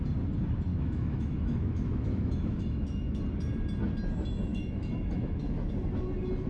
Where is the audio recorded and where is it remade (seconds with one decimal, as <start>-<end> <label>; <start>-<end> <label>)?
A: 0.0-0.7 recorded; 0.7-3.2 remade; 3.2-4.5 recorded; 4.5-5.7 remade; 5.7-6.5 recorded